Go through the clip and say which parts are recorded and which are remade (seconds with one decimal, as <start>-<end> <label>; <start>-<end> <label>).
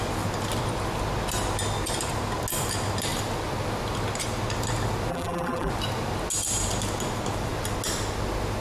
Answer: 0.0-5.1 recorded; 5.1-5.7 remade; 5.7-8.6 recorded